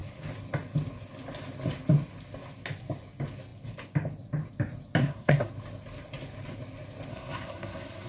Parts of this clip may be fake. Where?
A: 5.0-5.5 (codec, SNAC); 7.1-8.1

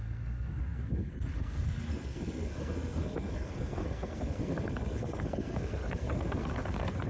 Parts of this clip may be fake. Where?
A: 0.0-7.1 (codec, SNAC)

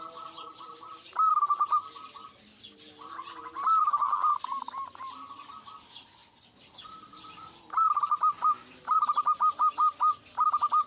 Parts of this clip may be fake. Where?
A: none

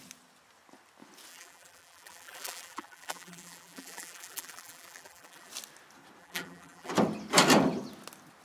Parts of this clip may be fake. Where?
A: 1.3-5.5 (vocoder, BigVGAN v2); 6.2-6.9